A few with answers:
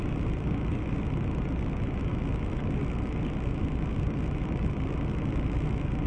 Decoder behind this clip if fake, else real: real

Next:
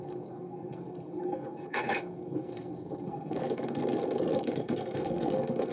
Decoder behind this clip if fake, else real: fake, codec, SNAC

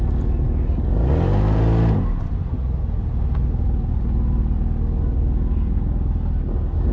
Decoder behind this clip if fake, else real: real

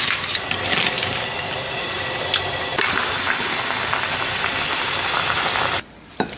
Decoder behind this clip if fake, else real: real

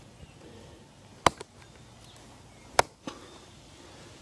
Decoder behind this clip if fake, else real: real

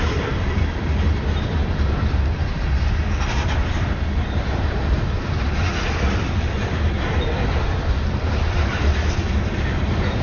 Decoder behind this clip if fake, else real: fake, vocoder, BigVGAN v2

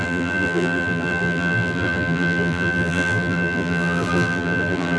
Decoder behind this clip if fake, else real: fake, vocoder, BigVGAN v2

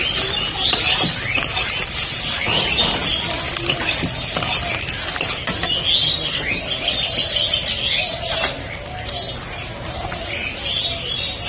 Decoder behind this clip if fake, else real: real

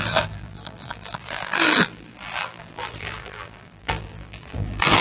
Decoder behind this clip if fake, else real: fake, vocoder, BigVGAN v2